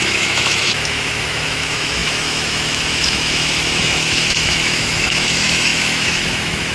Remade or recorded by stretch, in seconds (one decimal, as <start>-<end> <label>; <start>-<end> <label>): 0.0-6.7 remade